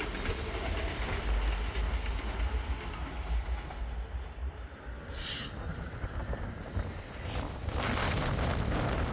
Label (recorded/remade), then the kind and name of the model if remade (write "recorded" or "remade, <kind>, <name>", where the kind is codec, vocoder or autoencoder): recorded